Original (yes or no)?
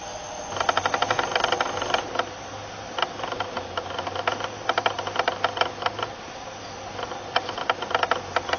yes